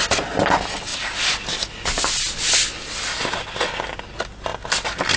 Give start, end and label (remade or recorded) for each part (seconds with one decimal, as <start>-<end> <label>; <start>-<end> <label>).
0.0-5.2 recorded